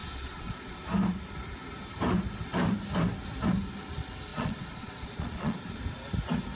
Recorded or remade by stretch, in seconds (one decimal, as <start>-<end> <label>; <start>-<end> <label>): 0.0-0.8 remade; 0.8-4.3 recorded; 4.3-5.8 remade; 5.8-6.6 recorded